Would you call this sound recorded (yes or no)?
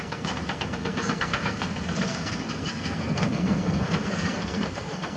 no